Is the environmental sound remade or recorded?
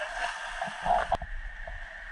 recorded